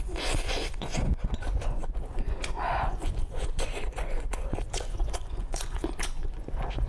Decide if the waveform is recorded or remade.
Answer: remade